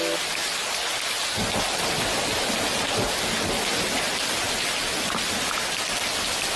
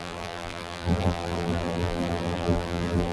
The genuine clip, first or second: first